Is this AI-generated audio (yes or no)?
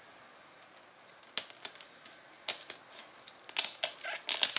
no